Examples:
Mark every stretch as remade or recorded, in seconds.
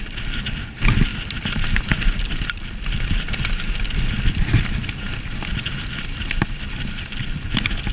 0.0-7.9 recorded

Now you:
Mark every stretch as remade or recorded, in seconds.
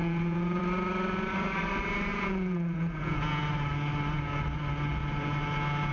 0.0-0.6 remade; 0.6-2.1 recorded; 2.1-3.4 remade; 3.4-5.9 recorded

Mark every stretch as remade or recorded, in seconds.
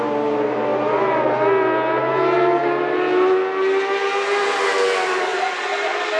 0.0-6.2 recorded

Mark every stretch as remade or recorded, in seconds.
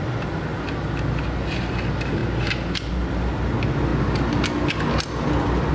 0.0-5.7 recorded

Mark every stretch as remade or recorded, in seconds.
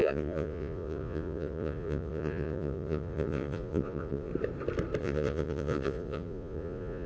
0.0-4.3 remade; 4.3-5.0 recorded; 5.0-7.1 remade